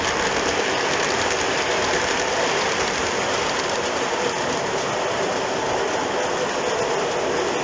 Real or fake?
real